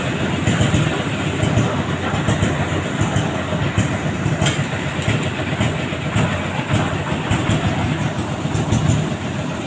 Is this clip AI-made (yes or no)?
no